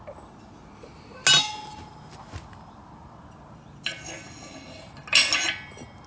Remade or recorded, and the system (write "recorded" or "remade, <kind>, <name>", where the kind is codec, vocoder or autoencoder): recorded